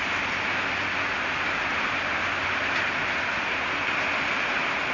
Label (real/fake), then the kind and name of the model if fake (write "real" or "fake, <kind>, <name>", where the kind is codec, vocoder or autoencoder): real